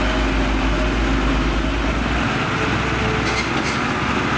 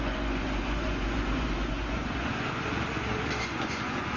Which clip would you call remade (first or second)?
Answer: second